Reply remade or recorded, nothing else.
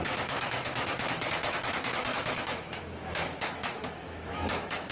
remade